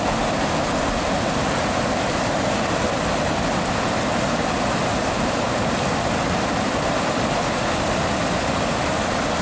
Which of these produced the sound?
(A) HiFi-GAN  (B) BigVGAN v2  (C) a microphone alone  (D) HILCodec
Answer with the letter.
C